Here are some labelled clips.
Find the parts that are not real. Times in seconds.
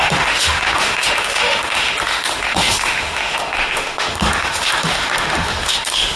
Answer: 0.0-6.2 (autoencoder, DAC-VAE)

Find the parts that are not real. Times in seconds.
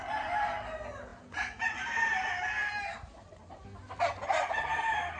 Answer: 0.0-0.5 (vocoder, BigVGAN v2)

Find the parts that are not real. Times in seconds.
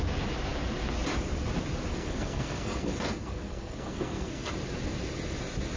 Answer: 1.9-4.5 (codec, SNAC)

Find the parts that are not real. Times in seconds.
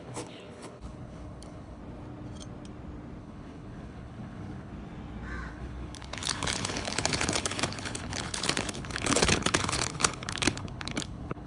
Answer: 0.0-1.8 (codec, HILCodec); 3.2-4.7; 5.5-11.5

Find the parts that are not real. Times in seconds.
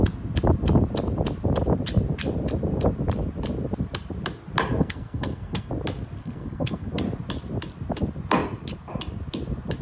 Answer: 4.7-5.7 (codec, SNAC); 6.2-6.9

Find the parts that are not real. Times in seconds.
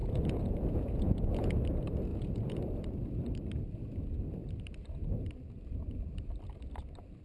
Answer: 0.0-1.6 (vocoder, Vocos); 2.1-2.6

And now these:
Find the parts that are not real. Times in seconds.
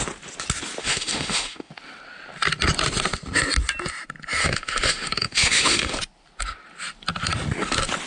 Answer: 0.8-1.7 (autoencoder, DAC-VAE); 4.4-6.0